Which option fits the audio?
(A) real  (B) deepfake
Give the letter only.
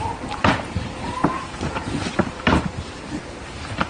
B